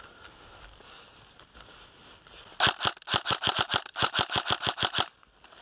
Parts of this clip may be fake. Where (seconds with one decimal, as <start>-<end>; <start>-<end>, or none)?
none